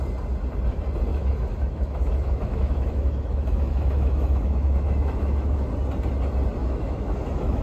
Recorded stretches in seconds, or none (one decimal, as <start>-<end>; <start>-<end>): 0.0-1.1; 5.7-6.6